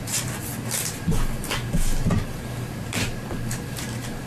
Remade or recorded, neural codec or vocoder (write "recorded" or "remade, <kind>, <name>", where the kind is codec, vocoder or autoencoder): recorded